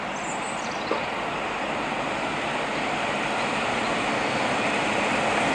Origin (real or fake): real